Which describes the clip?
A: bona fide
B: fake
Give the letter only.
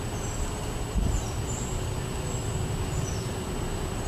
A